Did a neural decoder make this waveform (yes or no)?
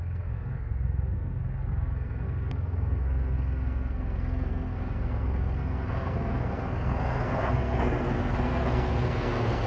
yes